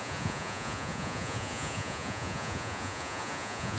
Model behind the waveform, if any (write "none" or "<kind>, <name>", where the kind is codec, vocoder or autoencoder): vocoder, Vocos